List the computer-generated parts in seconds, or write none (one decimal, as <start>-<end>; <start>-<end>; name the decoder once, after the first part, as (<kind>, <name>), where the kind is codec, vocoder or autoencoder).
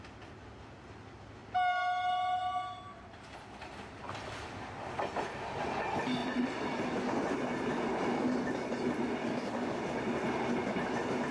9.2-9.8 (codec, DAC)